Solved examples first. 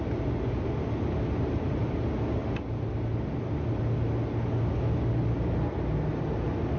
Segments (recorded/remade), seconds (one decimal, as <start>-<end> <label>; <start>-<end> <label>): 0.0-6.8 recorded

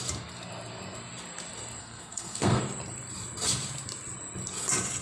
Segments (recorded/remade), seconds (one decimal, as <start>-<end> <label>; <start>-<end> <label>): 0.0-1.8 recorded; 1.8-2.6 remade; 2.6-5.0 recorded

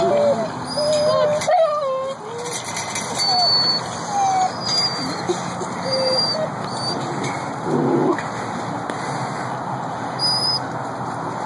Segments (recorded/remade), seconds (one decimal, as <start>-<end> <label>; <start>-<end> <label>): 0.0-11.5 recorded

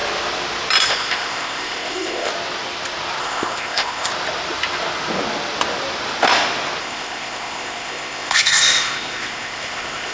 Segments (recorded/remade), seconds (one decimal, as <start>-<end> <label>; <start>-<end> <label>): 0.0-0.9 recorded; 0.9-2.3 remade; 2.3-3.2 recorded; 3.2-4.1 remade; 4.1-6.8 recorded; 6.8-10.1 remade

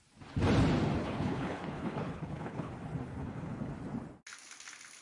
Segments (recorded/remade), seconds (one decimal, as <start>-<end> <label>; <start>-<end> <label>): 0.0-1.0 recorded; 1.0-2.7 remade; 2.7-3.2 recorded; 3.2-3.7 remade; 3.7-5.0 recorded